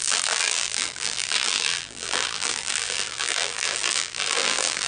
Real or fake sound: fake